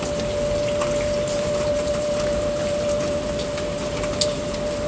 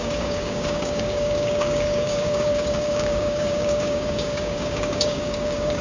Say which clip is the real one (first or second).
first